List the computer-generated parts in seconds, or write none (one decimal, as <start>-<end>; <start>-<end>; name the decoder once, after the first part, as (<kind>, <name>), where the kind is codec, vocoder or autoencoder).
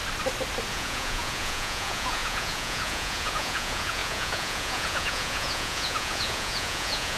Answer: 0.7-7.2 (vocoder, Vocos)